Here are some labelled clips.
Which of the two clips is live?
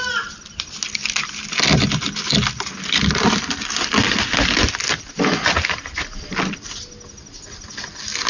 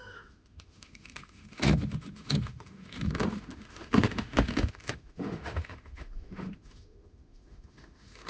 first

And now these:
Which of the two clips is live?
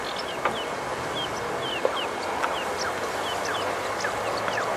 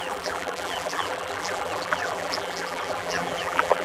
first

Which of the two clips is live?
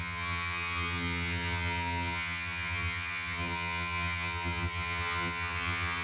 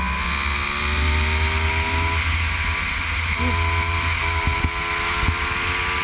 second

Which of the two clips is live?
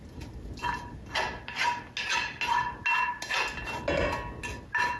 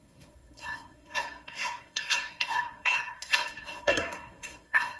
first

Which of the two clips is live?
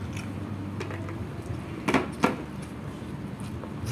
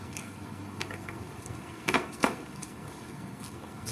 first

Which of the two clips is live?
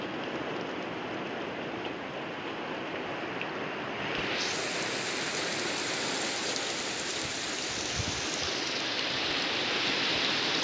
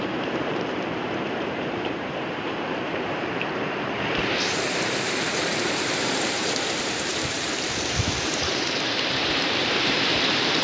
first